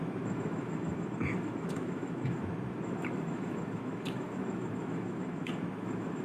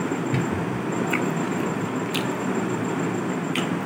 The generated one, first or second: first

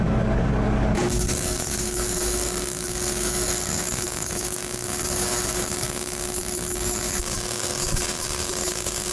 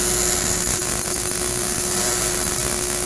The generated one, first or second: first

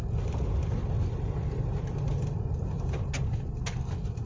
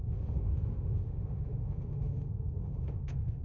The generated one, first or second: second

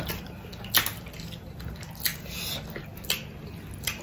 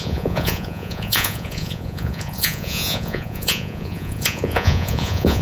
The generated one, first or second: second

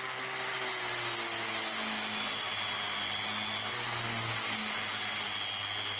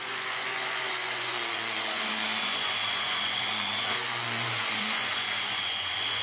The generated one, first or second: second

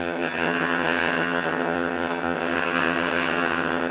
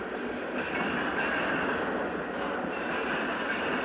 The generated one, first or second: first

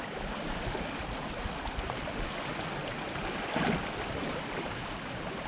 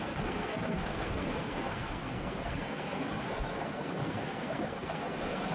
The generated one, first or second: second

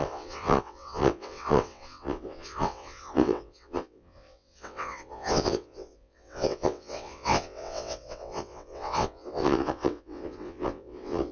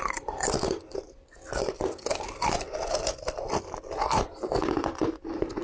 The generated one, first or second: first